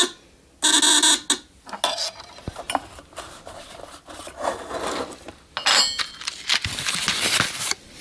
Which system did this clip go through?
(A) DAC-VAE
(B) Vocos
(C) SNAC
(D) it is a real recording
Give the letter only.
D